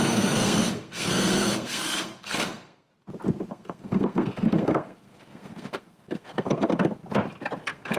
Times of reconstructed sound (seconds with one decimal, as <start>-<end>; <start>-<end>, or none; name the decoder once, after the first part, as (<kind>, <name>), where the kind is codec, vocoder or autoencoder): 0.0-2.9 (codec, SNAC); 3.5-7.0; 7.6-8.0